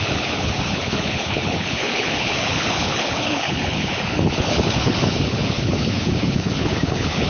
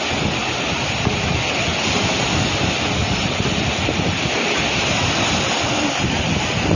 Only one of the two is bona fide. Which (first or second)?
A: second